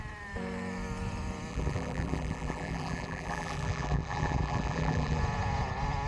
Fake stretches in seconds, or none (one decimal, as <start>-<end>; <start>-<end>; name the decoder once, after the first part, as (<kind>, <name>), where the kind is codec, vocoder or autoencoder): 1.5-5.2 (vocoder, BigVGAN v2)